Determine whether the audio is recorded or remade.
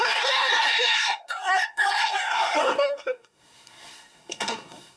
remade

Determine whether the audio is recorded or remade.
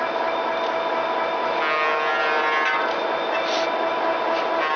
recorded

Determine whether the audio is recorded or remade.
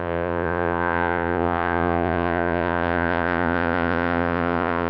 remade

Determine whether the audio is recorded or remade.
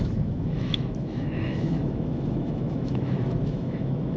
remade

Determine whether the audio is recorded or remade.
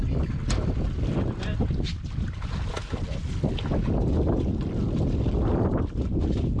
recorded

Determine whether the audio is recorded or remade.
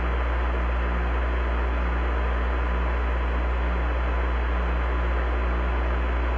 recorded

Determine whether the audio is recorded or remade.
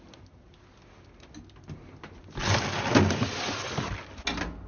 recorded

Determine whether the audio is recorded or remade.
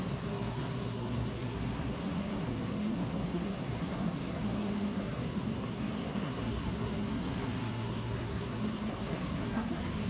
remade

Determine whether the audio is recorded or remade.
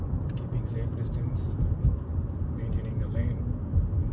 recorded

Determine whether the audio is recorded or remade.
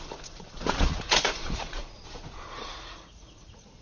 remade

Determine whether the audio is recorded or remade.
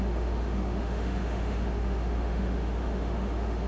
remade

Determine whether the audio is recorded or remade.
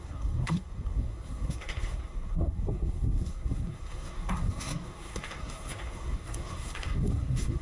remade